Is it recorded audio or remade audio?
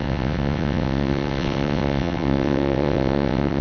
remade